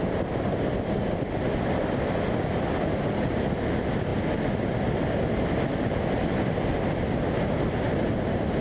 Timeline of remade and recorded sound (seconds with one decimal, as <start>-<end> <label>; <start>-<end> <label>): 0.0-8.6 recorded